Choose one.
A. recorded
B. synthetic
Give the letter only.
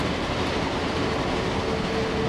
A